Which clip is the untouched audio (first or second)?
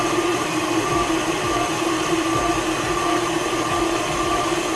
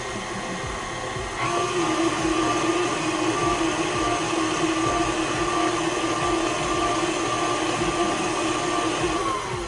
second